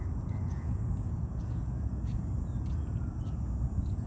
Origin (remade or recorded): remade